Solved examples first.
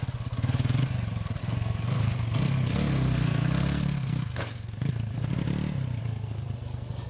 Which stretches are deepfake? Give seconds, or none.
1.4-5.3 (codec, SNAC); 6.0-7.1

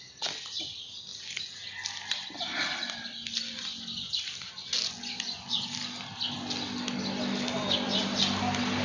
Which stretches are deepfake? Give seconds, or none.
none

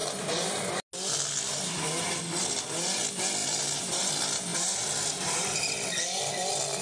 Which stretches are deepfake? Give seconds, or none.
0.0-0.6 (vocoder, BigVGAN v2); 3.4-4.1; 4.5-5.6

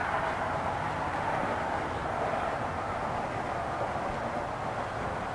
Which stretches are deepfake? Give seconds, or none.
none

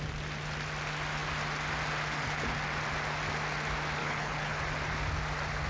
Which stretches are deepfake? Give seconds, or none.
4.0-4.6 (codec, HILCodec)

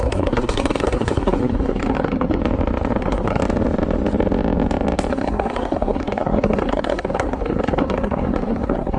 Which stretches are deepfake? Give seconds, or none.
0.0-2.4 (codec, SNAC); 3.0-3.4; 5.1-9.0

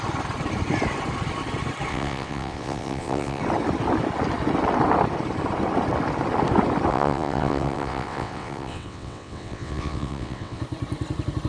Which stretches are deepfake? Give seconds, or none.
1.9-3.4 (vocoder, WaveNeXt); 6.9-10.6